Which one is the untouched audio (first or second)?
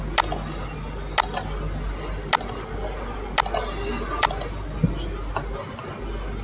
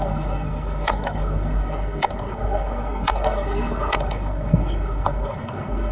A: first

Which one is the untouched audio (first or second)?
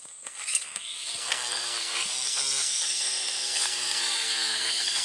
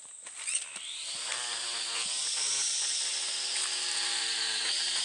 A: second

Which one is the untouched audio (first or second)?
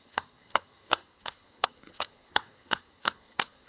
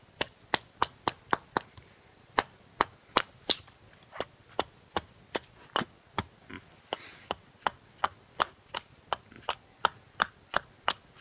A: second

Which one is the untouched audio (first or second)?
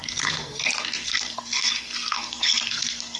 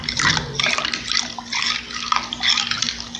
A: second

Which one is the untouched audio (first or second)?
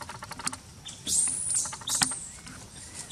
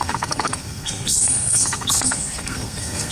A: first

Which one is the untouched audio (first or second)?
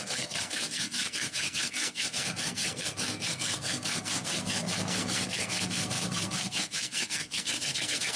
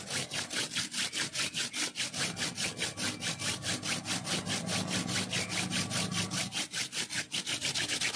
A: second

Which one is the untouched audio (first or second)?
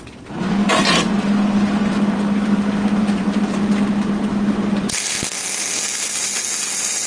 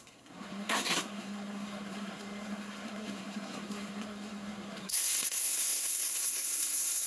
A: first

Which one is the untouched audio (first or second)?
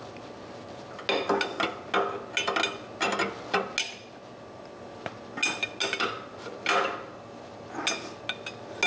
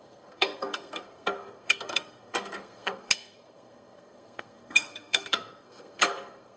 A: first